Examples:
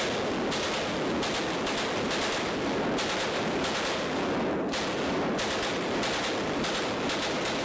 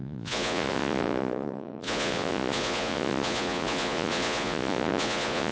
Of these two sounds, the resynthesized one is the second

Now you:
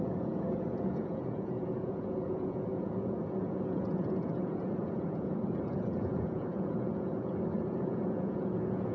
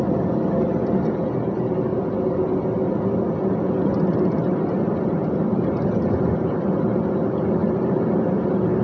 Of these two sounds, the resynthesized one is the first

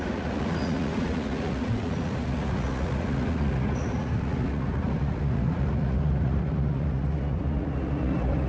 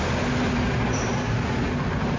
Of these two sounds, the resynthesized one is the first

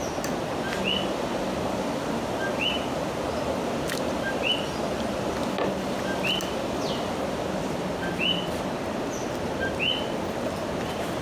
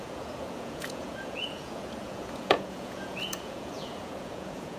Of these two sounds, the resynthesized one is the second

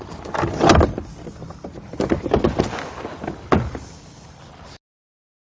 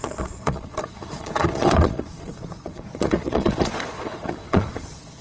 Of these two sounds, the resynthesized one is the second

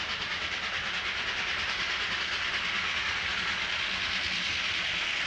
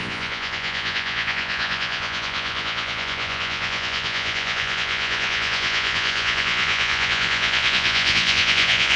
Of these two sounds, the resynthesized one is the second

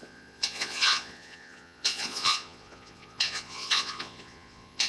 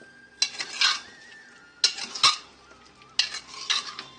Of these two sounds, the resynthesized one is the first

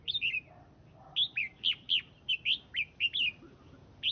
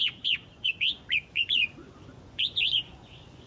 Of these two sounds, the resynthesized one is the second